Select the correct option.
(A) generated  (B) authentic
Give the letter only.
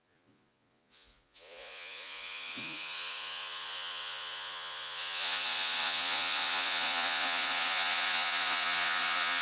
A